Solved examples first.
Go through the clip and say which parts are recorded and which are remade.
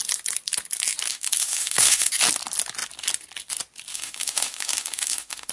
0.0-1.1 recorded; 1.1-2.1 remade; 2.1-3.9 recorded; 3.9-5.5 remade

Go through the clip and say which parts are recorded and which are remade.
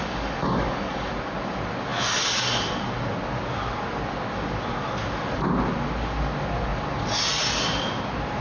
0.0-1.1 remade; 1.1-8.4 recorded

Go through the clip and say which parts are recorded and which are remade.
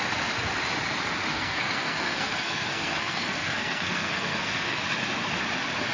0.0-1.3 recorded; 1.3-4.8 remade; 4.8-5.9 recorded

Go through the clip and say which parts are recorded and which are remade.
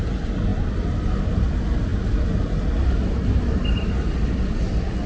0.0-5.1 recorded